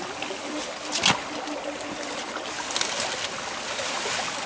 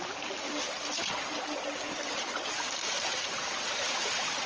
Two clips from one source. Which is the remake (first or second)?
second